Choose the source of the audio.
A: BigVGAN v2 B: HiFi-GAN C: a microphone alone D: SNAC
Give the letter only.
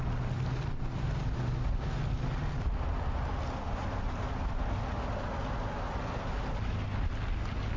C